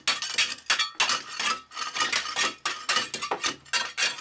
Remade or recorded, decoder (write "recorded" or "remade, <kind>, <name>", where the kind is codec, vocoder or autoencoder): recorded